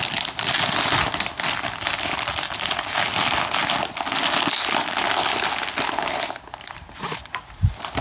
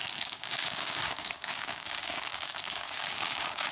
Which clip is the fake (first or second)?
second